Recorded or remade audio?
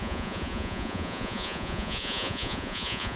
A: remade